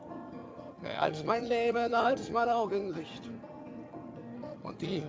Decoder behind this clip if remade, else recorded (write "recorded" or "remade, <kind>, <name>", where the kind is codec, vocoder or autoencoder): remade, vocoder, HiFi-GAN